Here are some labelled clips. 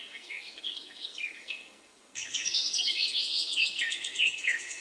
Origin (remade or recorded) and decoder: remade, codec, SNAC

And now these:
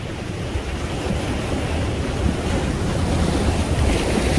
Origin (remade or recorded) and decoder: recorded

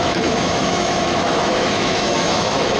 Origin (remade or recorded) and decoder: remade, autoencoder, DAC-VAE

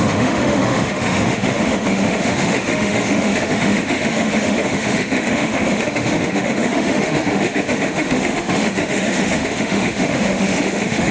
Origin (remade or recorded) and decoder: remade, autoencoder, DAC-VAE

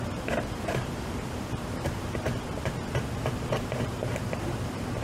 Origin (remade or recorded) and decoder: remade, vocoder, BigVGAN v2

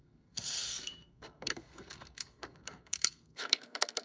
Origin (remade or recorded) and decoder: remade, codec, SNAC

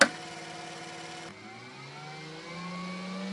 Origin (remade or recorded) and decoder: recorded